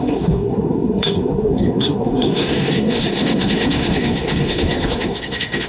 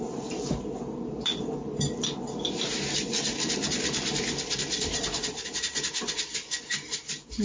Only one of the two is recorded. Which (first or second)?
second